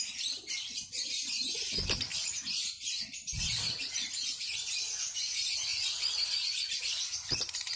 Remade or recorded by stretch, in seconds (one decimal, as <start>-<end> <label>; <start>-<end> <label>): 0.0-3.2 remade; 3.2-4.1 recorded; 4.1-5.7 remade; 5.7-6.8 recorded; 6.8-7.8 remade